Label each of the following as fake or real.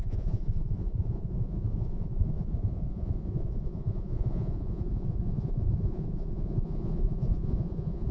fake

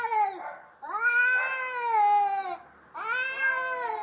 real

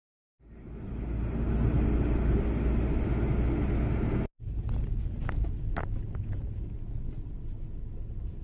real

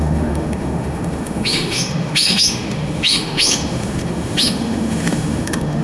fake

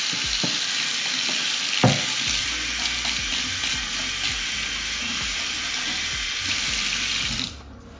real